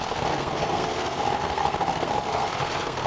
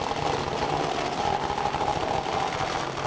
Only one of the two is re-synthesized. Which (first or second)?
first